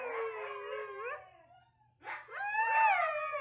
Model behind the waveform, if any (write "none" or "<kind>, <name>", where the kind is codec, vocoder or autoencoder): none